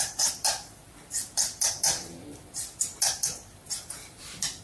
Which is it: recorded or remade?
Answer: remade